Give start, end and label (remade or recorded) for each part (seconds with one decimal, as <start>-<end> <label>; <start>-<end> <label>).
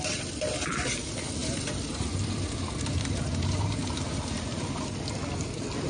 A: 0.0-1.4 recorded; 1.4-4.9 remade; 4.9-5.9 recorded